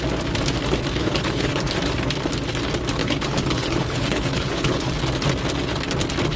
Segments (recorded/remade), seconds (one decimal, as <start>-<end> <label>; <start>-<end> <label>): 0.0-1.0 recorded; 1.0-1.6 remade; 1.6-3.0 recorded; 3.0-4.9 remade; 4.9-6.4 recorded